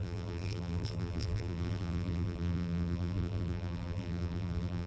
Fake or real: fake